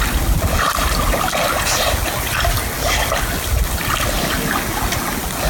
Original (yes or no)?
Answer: yes